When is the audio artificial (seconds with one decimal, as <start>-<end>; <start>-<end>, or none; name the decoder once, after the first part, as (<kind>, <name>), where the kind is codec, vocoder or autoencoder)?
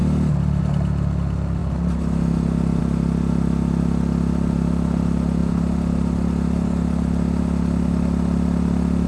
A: none